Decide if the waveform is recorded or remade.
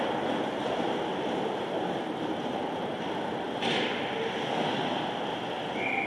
recorded